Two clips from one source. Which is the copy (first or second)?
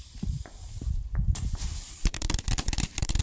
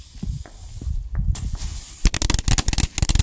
first